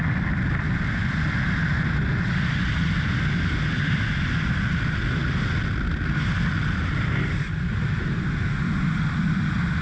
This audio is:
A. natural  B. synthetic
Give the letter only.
A